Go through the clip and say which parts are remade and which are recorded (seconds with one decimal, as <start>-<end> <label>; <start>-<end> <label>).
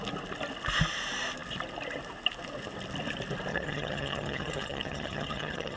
0.0-3.5 recorded; 3.5-5.8 remade